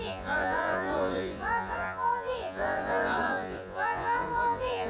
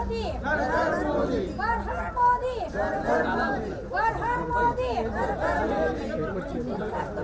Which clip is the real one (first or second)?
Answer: second